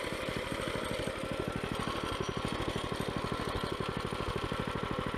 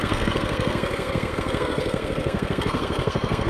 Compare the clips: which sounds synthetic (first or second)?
second